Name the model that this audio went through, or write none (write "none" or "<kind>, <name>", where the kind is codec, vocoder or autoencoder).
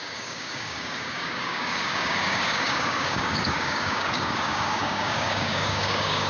codec, DAC